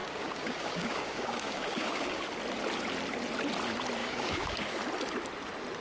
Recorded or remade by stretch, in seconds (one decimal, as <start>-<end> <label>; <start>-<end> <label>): 0.0-2.2 remade; 2.2-4.0 recorded; 4.0-4.8 remade; 4.8-5.8 recorded